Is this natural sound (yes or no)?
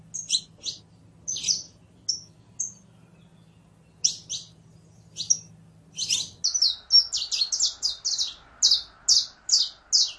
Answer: yes